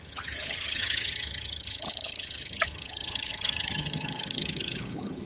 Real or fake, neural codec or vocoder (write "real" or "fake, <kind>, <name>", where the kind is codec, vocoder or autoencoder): fake, vocoder, HiFi-GAN